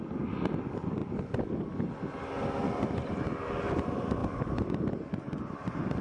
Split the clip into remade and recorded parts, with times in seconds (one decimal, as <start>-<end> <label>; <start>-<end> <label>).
0.0-6.0 recorded